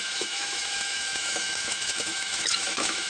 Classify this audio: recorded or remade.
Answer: remade